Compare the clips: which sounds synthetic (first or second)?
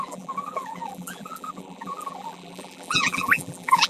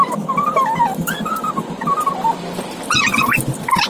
first